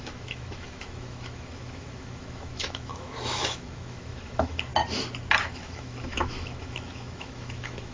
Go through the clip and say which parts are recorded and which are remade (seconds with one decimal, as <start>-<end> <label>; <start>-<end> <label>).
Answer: 0.0-4.7 remade; 4.7-5.4 recorded; 5.4-7.9 remade